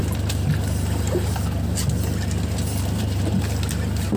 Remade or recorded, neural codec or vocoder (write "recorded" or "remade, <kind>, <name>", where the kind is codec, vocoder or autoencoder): recorded